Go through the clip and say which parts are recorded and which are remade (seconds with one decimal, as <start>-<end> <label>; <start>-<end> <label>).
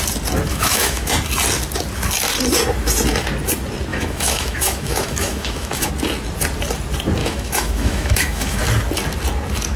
0.0-0.5 recorded; 0.5-1.1 remade; 1.1-3.9 recorded; 3.9-5.9 remade; 5.9-7.2 recorded; 7.2-8.6 remade; 8.6-9.8 recorded